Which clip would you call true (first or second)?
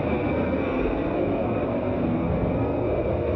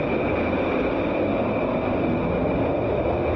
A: second